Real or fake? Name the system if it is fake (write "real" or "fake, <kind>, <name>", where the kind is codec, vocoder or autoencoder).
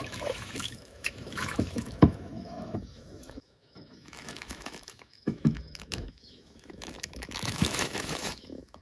fake, autoencoder, DAC-VAE